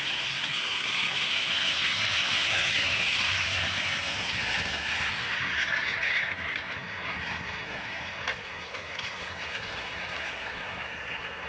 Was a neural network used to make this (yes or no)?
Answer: yes